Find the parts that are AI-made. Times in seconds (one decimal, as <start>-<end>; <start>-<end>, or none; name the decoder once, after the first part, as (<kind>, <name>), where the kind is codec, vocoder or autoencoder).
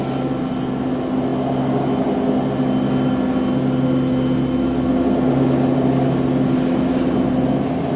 none